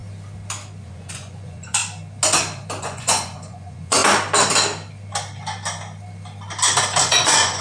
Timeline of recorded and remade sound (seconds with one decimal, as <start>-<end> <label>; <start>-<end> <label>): 0.0-0.8 recorded; 0.8-1.8 remade; 1.8-2.8 recorded; 2.8-4.0 remade; 4.0-7.0 recorded; 7.0-7.6 remade